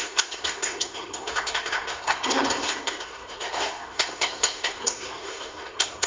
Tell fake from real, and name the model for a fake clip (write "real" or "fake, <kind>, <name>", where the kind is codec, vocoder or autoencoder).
fake, codec, SNAC